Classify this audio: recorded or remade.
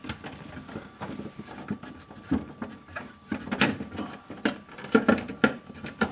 recorded